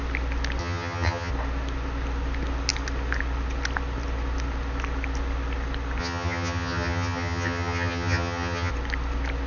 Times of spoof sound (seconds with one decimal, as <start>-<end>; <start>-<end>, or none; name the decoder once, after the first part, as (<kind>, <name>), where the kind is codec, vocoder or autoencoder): 0.6-1.3 (vocoder, HiFi-GAN); 6.0-8.7